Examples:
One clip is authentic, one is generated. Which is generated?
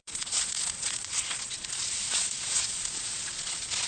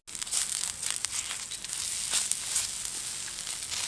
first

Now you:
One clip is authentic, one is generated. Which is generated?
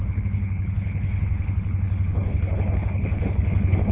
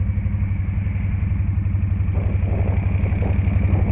first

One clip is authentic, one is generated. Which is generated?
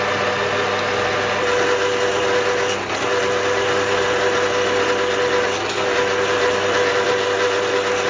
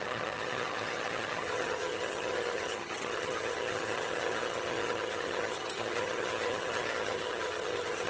second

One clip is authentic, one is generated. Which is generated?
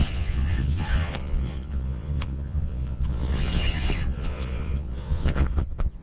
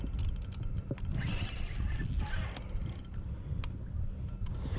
first